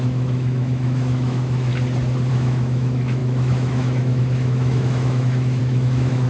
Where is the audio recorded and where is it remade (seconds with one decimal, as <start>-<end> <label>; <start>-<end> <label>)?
0.0-1.7 remade; 1.7-2.3 recorded; 2.3-6.3 remade